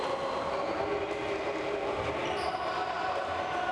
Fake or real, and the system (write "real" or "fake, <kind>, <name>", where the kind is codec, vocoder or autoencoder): real